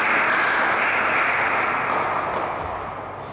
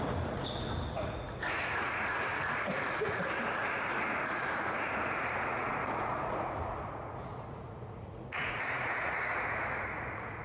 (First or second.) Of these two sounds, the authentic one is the first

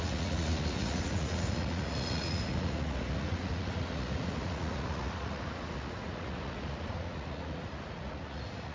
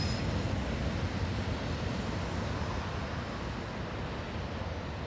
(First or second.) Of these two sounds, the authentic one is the second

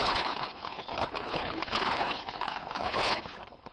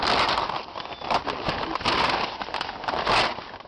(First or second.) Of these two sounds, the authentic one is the second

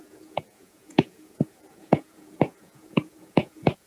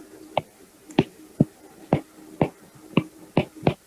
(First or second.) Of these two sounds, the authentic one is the second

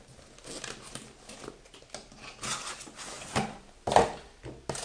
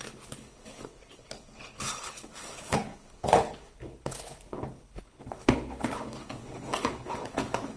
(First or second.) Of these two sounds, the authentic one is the first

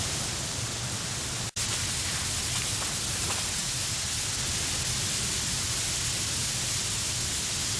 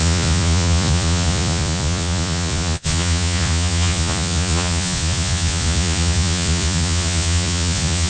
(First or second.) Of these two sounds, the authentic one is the first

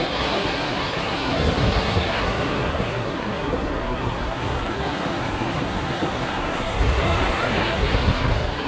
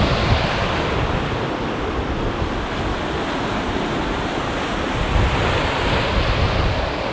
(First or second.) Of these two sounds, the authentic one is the second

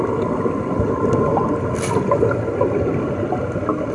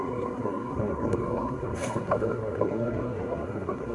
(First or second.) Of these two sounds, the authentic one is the first